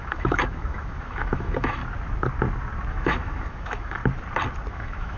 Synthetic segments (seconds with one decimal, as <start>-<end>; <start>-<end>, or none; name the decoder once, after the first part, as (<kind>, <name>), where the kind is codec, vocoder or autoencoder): 0.0-1.8 (autoencoder, DAC-VAE); 2.9-4.0; 4.7-5.2